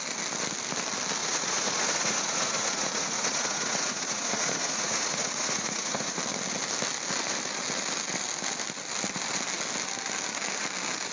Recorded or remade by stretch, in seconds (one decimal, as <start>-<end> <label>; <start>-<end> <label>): 0.0-1.2 recorded; 1.2-6.2 remade; 6.2-11.1 recorded

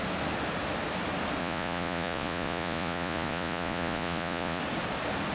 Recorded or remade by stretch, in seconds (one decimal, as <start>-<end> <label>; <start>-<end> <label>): 0.0-1.4 recorded; 1.4-4.6 remade; 4.6-5.3 recorded

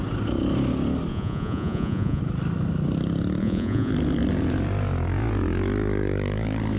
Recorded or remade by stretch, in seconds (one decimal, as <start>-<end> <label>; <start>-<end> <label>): 0.0-1.1 recorded; 1.1-2.2 remade; 2.2-3.4 recorded; 3.4-3.9 remade; 3.9-6.8 recorded